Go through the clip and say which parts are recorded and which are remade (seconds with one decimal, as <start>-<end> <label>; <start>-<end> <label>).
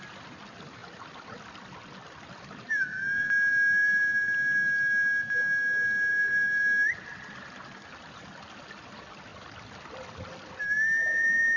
0.0-6.1 recorded; 6.1-6.6 remade; 6.6-9.3 recorded; 9.3-10.5 remade; 10.5-11.6 recorded